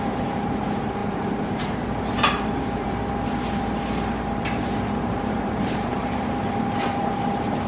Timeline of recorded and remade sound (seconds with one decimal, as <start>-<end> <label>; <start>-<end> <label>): 0.0-7.7 remade